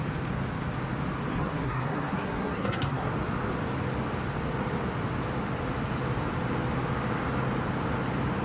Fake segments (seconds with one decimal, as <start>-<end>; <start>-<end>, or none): 1.3-3.1